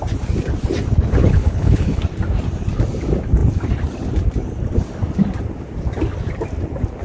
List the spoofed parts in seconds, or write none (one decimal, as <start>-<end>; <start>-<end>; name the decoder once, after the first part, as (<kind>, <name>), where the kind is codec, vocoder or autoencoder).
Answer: 1.2-2.0 (codec, HILCodec)